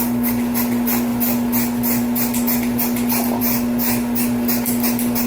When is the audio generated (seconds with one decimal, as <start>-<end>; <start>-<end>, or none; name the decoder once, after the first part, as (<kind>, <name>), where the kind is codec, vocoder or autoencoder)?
none